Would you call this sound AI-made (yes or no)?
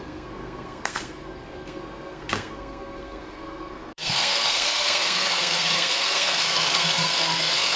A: yes